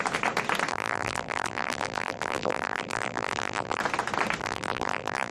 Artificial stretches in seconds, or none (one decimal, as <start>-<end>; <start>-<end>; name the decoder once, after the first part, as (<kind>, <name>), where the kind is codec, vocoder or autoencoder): 0.7-3.8 (vocoder, BigVGAN v2); 4.4-5.3